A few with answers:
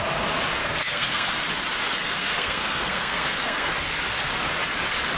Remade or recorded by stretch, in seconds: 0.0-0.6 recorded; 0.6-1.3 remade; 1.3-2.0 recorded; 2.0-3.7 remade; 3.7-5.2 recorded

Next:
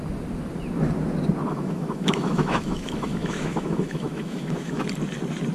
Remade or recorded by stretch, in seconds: 0.0-1.5 recorded; 1.5-4.8 remade; 4.8-5.5 recorded

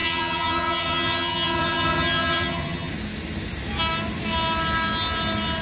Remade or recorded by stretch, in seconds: 0.0-2.9 remade; 2.9-5.6 recorded